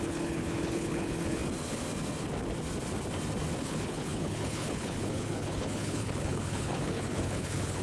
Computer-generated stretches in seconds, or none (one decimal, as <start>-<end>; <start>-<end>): 0.0-1.4; 3.6-7.8